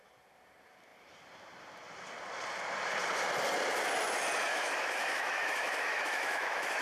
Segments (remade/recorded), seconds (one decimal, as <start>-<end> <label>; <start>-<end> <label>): 0.0-4.5 recorded; 4.5-6.8 remade